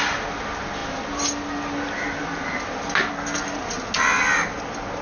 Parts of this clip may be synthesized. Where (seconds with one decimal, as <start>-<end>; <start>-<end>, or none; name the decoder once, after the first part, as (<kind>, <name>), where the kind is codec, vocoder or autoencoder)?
none